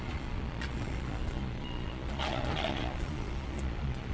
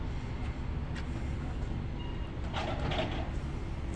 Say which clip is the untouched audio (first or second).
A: second